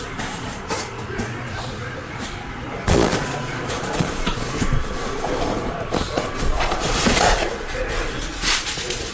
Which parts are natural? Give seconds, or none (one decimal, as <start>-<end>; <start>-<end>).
none